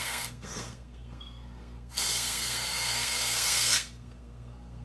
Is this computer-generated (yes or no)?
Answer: yes